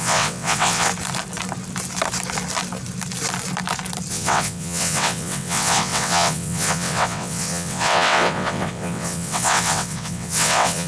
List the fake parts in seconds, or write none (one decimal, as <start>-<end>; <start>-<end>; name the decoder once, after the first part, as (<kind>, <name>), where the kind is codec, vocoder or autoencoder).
0.0-0.9 (vocoder, WaveNeXt); 4.1-10.9